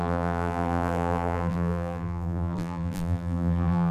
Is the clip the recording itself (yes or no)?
no